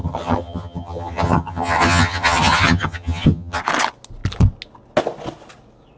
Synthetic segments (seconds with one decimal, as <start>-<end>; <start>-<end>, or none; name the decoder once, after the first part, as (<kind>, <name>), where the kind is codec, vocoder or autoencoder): 0.0-3.6 (vocoder, HiFi-GAN)

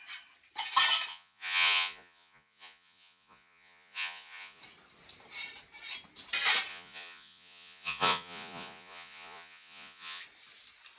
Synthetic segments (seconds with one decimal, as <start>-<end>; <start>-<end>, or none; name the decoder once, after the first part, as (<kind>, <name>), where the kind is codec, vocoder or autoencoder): 1.1-4.6 (vocoder, Vocos); 6.7-10.2

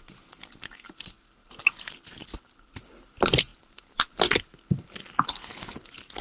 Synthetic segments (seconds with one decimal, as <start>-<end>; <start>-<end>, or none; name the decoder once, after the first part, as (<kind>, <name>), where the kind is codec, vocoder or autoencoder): 1.4-2.9 (vocoder, BigVGAN v2)